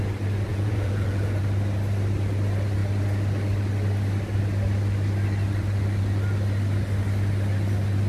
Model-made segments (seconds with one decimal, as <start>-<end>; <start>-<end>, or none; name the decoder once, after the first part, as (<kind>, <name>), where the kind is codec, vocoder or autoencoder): 0.5-1.4 (vocoder, Vocos)